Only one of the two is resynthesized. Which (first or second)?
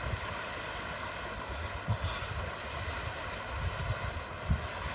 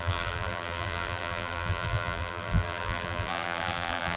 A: second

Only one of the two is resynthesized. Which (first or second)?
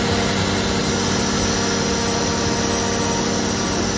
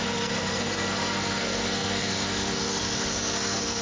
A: second